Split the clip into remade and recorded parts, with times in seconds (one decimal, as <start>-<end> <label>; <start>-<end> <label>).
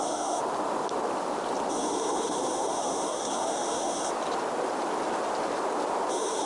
0.0-0.4 remade; 0.4-1.7 recorded; 1.7-4.1 remade; 4.1-6.1 recorded; 6.1-6.5 remade